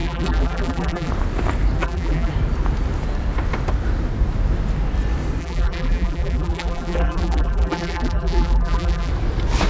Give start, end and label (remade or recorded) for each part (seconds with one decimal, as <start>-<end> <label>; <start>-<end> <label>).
0.0-1.1 remade; 1.1-1.8 recorded; 1.8-2.3 remade; 2.3-5.4 recorded; 5.4-9.1 remade; 9.1-9.7 recorded